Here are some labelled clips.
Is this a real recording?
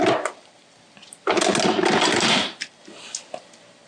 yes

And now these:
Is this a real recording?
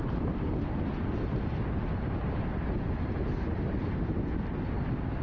yes